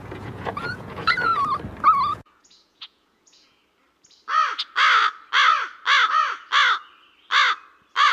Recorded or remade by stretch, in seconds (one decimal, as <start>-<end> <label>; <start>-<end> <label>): 0.0-1.3 remade; 1.3-2.1 recorded; 2.1-3.6 remade; 3.6-8.1 recorded